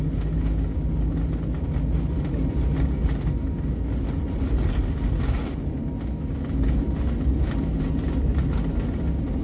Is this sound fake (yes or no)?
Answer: no